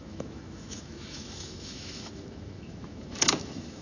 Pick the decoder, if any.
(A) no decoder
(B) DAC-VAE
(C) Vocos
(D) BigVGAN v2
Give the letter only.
B